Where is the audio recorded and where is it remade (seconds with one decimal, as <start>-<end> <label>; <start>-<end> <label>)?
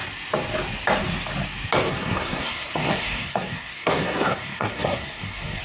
0.0-1.9 recorded; 1.9-5.6 remade